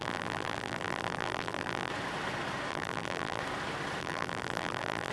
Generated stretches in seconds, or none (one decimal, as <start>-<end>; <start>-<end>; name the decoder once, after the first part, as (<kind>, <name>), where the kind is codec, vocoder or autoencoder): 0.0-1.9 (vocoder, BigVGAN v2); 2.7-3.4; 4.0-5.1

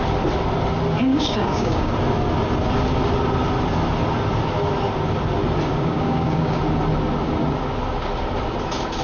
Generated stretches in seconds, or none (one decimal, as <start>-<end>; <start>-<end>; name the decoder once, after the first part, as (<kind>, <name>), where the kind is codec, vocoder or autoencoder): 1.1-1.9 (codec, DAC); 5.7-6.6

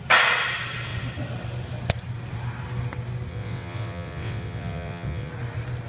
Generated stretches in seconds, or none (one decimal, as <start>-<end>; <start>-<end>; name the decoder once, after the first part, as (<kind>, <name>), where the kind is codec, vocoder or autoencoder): 3.3-5.3 (vocoder, WaveNeXt)

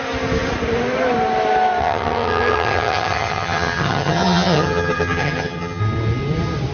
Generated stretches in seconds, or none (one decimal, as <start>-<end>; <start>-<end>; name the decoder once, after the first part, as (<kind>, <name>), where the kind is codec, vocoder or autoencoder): 1.8-5.8 (vocoder, HiFi-GAN)

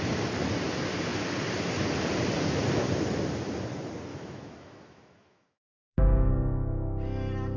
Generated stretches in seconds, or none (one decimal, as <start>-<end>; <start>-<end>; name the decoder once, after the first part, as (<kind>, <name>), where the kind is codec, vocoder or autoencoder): 4.1-6.3 (autoencoder, DAC-VAE)

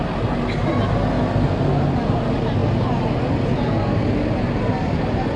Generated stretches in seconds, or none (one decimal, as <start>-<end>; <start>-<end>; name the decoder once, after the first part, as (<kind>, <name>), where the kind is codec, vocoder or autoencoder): none

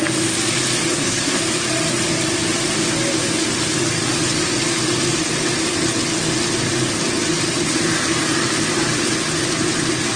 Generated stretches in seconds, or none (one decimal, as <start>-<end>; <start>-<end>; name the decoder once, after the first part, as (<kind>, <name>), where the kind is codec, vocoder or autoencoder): 0.9-1.4 (codec, SNAC)

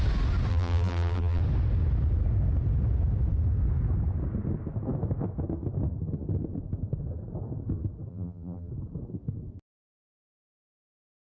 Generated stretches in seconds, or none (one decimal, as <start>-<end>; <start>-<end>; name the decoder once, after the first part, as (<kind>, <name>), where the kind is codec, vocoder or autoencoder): 0.5-1.4 (vocoder, BigVGAN v2); 8.1-8.7